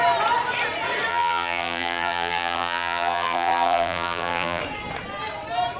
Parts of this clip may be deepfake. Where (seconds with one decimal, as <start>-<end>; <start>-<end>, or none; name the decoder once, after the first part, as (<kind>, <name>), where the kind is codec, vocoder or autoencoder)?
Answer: 1.1-4.6 (vocoder, BigVGAN v2)